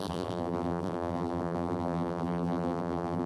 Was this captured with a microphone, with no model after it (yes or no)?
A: no